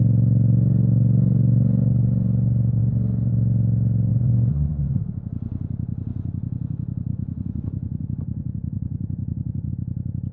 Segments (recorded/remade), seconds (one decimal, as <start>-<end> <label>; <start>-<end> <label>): 0.0-4.1 recorded; 4.1-5.0 remade; 5.0-7.1 recorded; 7.1-9.7 remade; 9.7-10.3 recorded